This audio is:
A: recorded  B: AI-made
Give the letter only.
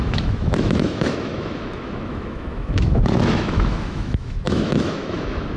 B